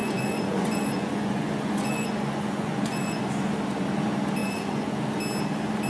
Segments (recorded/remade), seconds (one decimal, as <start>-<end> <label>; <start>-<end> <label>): 0.0-3.2 remade; 3.2-4.4 recorded; 4.4-5.1 remade; 5.1-5.9 recorded